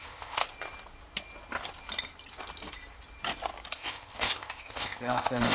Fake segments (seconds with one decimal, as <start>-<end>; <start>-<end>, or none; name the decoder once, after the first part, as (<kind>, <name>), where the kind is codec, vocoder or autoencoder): 0.0-0.4 (codec, ZipCodec); 3.7-5.5